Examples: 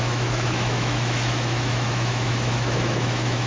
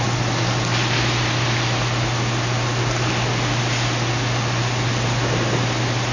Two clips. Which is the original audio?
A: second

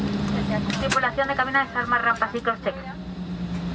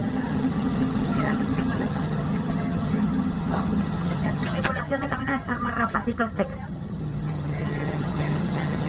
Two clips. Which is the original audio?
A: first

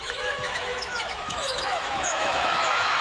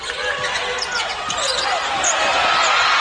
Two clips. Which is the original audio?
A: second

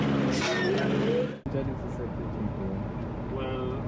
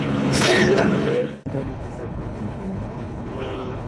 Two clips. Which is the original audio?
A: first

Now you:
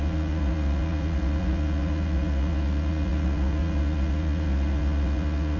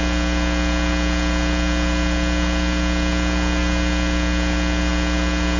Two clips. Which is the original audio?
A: second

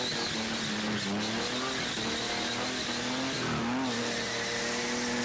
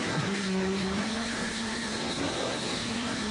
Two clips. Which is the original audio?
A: first